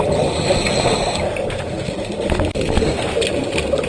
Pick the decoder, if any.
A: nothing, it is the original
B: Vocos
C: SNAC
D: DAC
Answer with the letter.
A